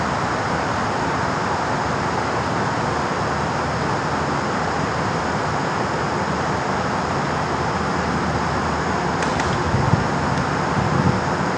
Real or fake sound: real